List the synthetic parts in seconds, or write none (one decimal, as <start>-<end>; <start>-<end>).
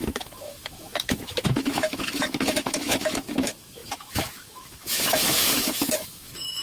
0.0-6.6